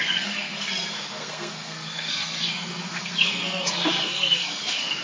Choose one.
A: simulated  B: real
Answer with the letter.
A